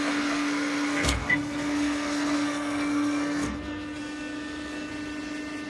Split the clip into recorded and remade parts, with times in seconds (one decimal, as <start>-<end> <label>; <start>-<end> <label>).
0.0-4.9 remade; 4.9-5.7 recorded